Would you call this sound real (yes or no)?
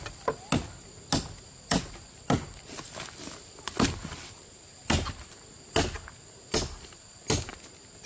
yes